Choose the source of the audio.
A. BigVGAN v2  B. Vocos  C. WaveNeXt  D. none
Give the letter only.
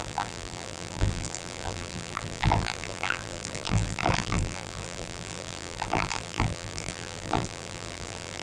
A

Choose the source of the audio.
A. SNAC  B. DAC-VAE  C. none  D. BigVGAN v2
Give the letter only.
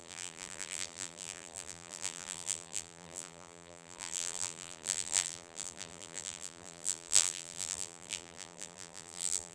D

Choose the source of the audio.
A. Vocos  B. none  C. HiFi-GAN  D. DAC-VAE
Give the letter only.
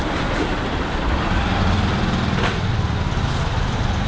B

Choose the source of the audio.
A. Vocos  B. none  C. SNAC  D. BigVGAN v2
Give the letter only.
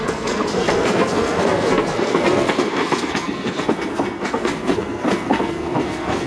C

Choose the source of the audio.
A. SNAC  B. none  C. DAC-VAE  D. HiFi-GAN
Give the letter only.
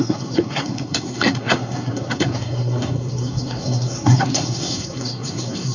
A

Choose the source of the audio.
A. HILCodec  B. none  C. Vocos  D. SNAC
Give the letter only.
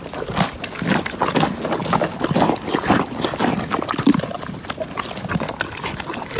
B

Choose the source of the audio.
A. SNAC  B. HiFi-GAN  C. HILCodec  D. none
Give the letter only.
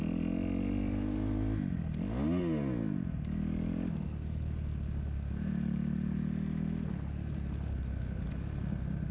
D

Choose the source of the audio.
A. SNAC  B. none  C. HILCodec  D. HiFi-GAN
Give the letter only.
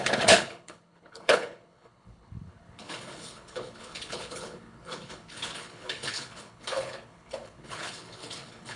C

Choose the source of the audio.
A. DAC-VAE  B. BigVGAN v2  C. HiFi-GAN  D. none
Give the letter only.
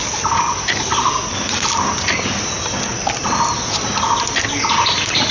D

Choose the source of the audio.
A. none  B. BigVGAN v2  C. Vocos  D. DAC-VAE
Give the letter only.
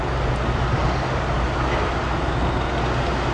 A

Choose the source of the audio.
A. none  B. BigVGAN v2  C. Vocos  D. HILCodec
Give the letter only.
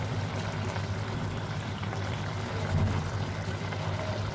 B